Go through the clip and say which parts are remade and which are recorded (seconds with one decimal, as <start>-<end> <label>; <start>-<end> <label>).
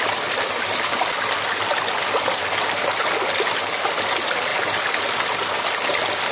0.0-6.3 recorded